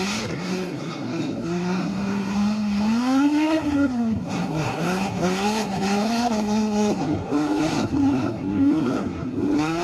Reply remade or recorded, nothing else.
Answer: remade